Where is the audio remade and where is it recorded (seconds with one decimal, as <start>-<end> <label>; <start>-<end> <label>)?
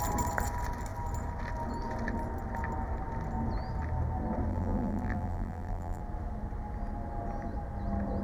0.0-4.5 recorded; 4.5-6.0 remade; 6.0-8.2 recorded